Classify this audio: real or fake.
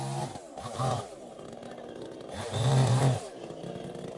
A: real